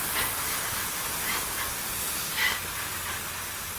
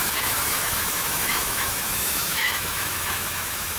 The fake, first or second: second